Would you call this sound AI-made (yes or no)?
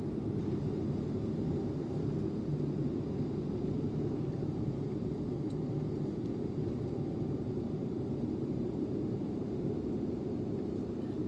yes